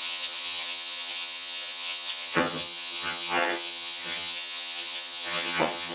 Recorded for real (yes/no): no